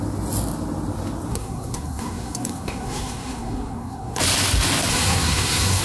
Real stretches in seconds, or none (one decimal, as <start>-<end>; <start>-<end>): 0.0-1.3; 4.2-4.9